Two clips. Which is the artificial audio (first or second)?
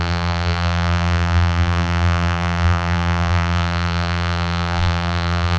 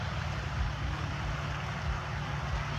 first